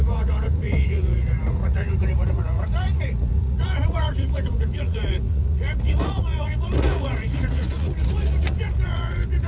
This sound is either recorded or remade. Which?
remade